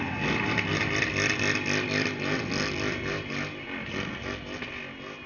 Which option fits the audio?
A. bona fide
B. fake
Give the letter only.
A